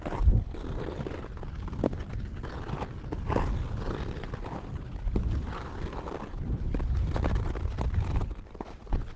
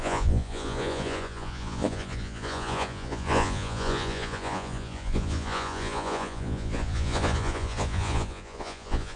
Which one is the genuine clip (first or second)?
first